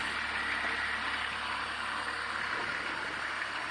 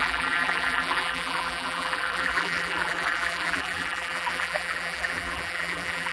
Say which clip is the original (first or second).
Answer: first